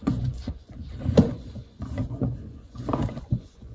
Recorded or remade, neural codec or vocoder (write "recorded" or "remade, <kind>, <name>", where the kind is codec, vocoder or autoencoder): remade, vocoder, Vocos